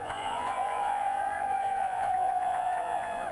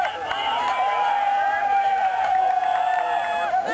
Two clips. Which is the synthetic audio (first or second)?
first